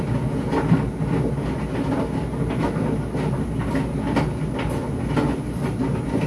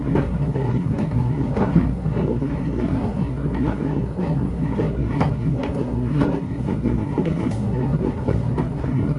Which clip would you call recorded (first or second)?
first